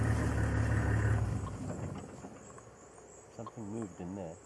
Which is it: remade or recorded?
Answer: recorded